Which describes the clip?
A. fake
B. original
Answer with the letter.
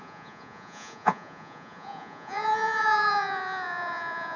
A